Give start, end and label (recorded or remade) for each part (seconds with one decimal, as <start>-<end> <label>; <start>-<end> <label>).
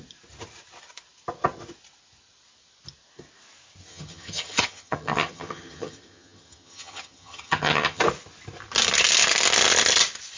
0.0-3.9 recorded; 3.9-8.0 remade; 8.0-10.4 recorded